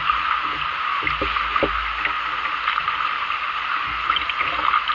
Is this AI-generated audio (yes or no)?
no